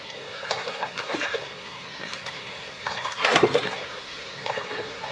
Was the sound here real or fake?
fake